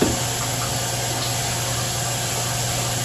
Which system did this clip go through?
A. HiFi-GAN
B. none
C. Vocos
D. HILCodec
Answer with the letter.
B